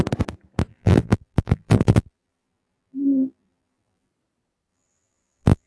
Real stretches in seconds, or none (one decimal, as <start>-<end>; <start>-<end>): 0.0-0.7; 4.1-4.7